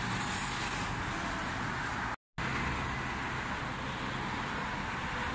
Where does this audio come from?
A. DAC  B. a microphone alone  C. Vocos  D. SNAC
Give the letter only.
B